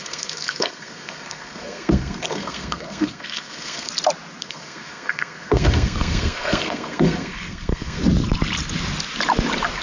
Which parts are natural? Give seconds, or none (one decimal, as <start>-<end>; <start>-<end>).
3.9-4.4; 8.0-9.8